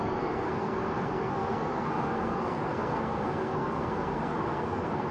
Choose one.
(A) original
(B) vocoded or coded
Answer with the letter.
B